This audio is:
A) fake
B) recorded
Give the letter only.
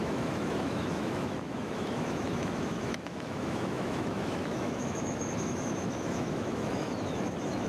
A